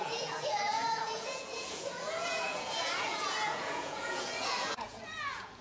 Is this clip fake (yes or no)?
yes